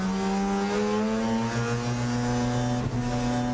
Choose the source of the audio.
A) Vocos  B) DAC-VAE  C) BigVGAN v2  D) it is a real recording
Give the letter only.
D